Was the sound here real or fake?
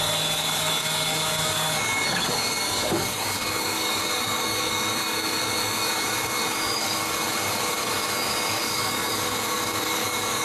fake